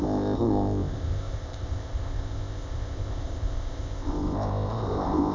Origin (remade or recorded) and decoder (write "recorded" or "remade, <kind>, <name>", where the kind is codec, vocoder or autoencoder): remade, codec, ZipCodec